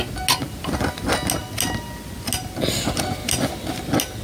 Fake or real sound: real